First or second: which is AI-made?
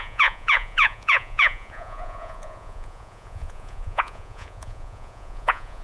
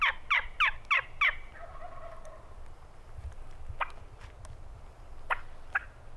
first